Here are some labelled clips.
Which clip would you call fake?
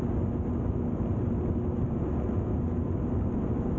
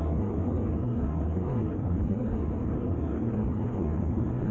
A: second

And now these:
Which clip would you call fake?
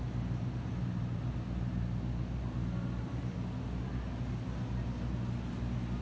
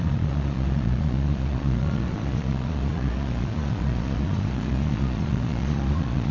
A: second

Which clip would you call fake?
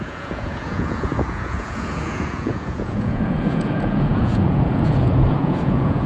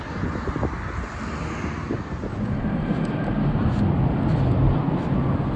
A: first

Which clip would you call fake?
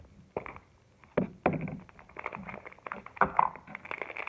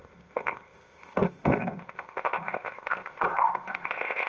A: second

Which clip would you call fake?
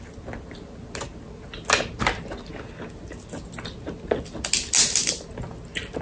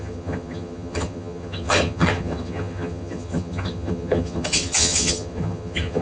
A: second